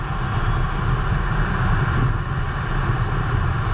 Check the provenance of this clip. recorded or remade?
recorded